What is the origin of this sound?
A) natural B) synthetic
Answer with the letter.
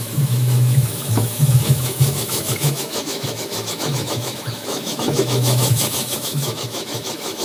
B